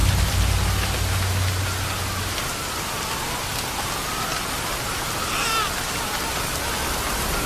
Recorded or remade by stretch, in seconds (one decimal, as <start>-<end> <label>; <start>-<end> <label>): 0.0-7.5 recorded